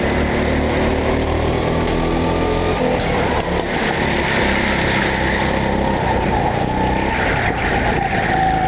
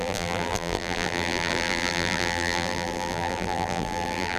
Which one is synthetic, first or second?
second